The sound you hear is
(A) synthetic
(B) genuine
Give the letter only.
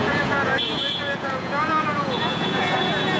A